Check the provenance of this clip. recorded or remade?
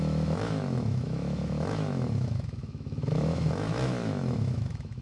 remade